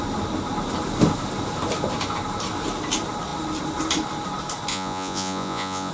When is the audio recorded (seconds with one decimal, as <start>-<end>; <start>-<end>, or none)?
0.0-4.7